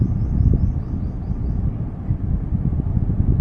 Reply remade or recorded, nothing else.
recorded